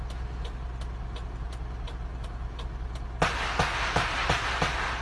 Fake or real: real